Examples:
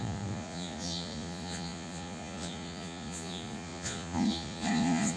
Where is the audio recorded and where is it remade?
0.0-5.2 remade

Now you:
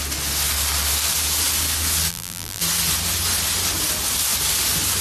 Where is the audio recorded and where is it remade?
0.0-2.1 recorded; 2.1-2.6 remade; 2.6-5.0 recorded

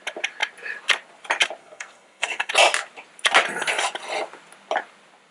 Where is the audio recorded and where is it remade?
0.0-1.6 recorded; 1.6-2.5 remade; 2.5-5.3 recorded

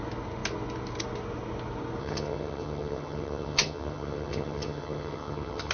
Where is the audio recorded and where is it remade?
0.0-2.0 recorded; 2.0-5.7 remade

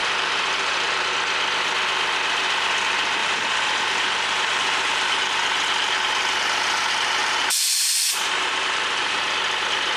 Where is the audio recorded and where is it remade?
0.0-1.1 remade; 1.1-3.2 recorded; 3.2-5.2 remade; 5.2-7.2 recorded; 7.2-9.2 remade; 9.2-10.0 recorded

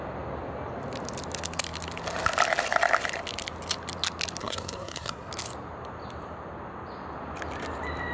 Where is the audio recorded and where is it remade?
0.0-4.4 recorded; 4.4-5.3 remade; 5.3-8.1 recorded

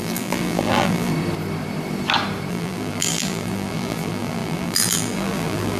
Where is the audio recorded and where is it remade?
0.0-1.1 remade; 1.1-2.5 recorded; 2.5-5.8 remade